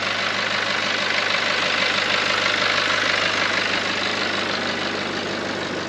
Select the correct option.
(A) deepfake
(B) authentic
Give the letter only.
B